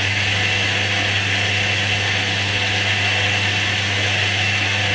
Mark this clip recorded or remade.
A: recorded